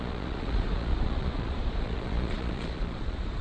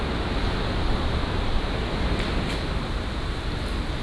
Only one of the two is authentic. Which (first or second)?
second